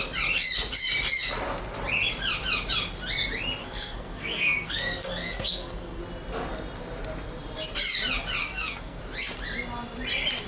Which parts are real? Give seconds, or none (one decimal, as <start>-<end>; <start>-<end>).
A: 0.0-3.6; 6.0-8.4; 9.0-10.5